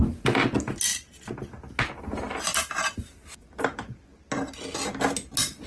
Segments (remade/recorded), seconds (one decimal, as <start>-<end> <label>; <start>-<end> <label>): 0.0-5.7 recorded